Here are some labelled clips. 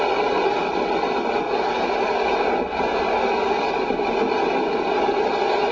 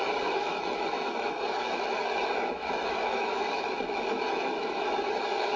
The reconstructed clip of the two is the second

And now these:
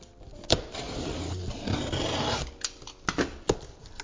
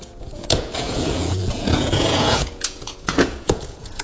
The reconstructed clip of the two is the second